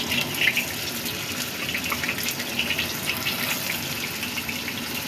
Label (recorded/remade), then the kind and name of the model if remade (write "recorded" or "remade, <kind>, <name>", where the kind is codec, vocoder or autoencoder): recorded